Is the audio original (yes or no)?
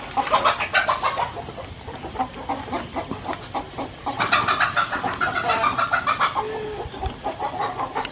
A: yes